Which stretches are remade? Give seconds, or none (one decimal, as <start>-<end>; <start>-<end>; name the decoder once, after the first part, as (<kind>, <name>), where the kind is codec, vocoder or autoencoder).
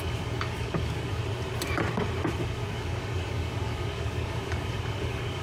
0.0-1.2 (codec, DAC); 2.4-5.4